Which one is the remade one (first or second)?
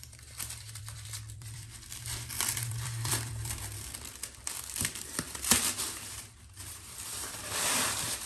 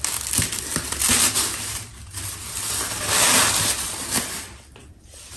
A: first